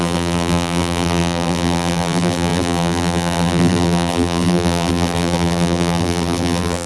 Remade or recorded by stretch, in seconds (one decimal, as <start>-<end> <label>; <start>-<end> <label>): 0.0-6.9 remade